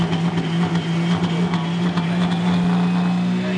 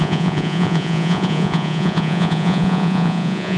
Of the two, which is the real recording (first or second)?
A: first